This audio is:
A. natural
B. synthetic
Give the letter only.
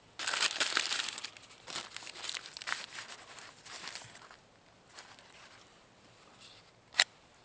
A